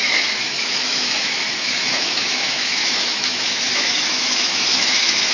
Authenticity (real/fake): fake